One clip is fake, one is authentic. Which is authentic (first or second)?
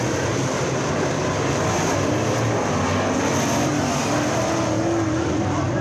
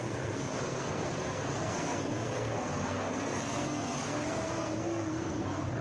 first